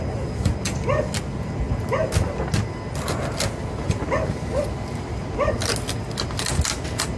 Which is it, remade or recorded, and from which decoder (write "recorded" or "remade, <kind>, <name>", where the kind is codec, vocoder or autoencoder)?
recorded